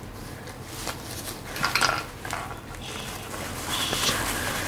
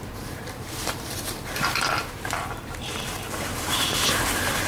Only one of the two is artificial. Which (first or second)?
second